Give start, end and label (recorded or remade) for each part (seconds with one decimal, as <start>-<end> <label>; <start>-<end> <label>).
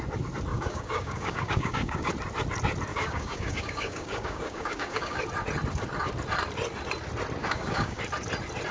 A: 0.0-0.5 recorded; 0.5-2.1 remade; 2.1-2.9 recorded; 2.9-5.2 remade; 5.2-7.4 recorded; 7.4-8.0 remade; 8.0-8.7 recorded